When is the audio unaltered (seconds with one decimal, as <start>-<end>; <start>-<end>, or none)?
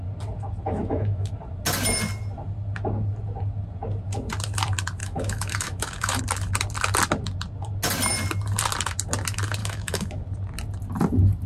0.0-0.8; 1.3-5.0; 6.2-9.6; 10.2-11.5